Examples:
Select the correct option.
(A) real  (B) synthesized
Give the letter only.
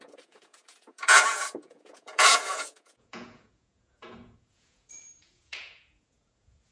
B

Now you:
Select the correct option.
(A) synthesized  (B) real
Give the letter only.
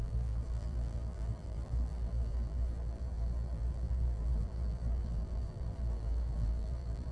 A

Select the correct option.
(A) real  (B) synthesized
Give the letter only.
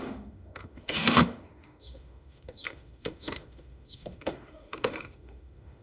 B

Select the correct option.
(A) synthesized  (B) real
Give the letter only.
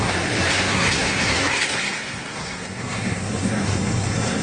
A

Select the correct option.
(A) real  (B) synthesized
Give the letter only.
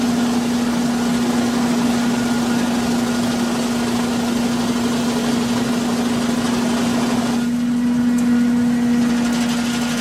A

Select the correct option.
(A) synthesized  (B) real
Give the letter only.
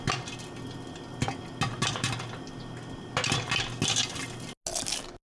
B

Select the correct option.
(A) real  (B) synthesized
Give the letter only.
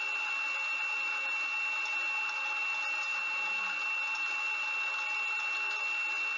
A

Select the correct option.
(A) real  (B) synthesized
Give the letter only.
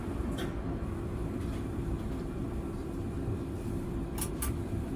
B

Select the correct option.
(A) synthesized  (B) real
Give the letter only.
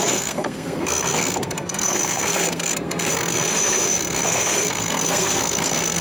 A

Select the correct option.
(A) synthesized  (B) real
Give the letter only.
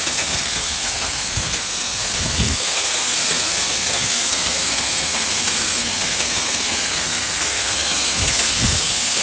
A